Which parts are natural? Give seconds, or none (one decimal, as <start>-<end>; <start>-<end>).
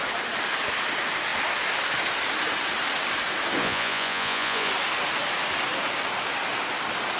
0.0-3.6; 4.7-7.2